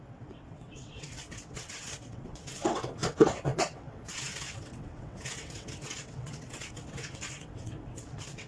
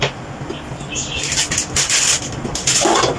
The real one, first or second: second